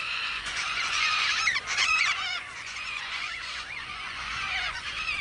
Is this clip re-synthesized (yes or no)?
yes